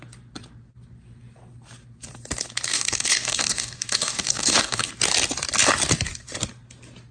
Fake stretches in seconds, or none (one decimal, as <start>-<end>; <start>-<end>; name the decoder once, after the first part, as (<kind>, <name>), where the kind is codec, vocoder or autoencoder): 2.7-4.9 (codec, DAC)